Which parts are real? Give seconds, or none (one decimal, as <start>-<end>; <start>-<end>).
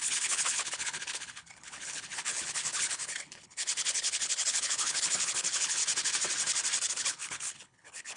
5.8-6.9